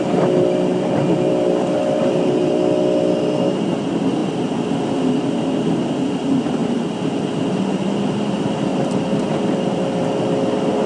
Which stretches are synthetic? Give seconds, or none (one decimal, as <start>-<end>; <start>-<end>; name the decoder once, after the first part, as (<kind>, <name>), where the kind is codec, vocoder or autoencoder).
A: 0.7-2.6 (vocoder, BigVGAN v2); 8.7-10.2